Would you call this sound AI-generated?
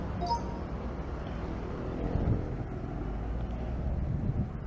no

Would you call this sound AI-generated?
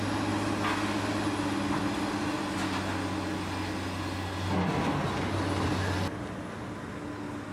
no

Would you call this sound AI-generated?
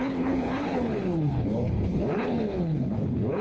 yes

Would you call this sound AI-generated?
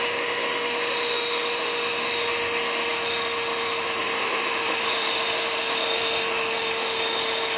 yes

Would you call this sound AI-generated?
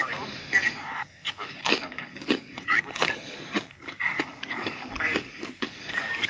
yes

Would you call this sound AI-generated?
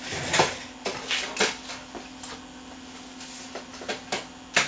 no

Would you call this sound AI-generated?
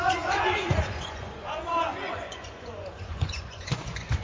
yes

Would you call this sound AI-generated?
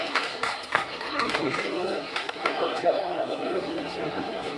yes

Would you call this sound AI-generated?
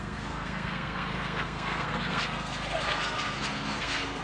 yes